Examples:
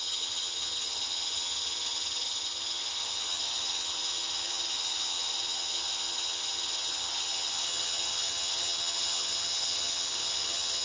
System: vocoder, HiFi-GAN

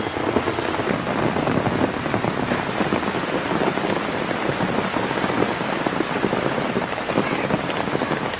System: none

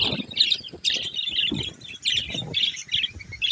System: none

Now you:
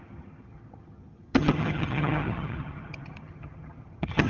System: vocoder, HiFi-GAN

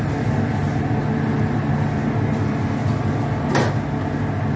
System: none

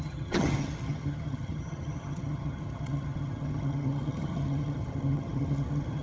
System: vocoder, HiFi-GAN